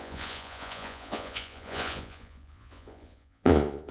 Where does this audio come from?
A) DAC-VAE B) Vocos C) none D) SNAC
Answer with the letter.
B